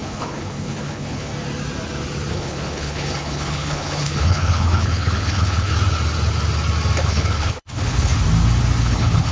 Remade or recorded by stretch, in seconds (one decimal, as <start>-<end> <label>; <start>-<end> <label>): 0.0-1.3 remade; 1.3-2.3 recorded; 2.3-5.7 remade; 5.7-7.0 recorded; 7.0-8.1 remade; 8.1-8.8 recorded; 8.8-9.3 remade